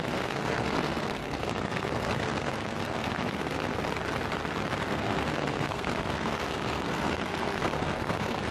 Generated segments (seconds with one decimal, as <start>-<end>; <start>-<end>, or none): 0.0-3.8; 4.9-8.5